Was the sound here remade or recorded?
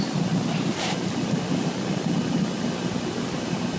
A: recorded